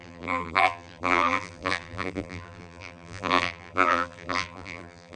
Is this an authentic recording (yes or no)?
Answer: no